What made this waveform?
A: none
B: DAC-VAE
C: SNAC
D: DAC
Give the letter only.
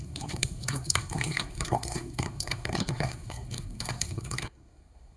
C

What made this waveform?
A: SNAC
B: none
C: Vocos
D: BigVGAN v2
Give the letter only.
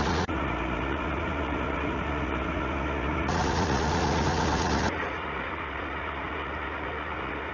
C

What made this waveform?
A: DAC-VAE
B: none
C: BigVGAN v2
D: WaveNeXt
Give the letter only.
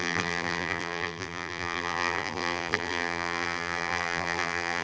C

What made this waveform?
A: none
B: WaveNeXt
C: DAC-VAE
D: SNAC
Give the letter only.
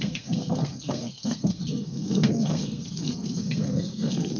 D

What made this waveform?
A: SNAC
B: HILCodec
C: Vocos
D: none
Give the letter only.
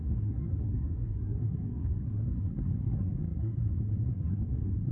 A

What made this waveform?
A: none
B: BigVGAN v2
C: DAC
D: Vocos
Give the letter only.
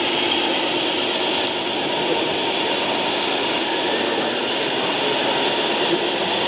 B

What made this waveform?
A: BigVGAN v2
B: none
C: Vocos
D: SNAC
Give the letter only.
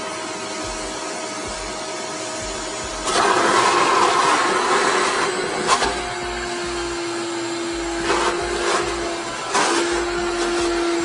B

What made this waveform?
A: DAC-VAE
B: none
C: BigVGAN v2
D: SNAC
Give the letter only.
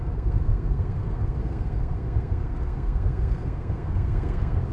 D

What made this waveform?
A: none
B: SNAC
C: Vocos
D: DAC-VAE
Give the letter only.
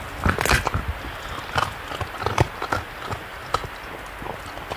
A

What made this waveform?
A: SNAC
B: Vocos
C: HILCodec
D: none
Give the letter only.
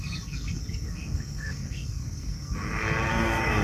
A